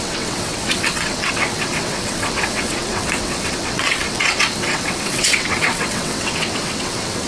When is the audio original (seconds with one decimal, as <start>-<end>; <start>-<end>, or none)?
none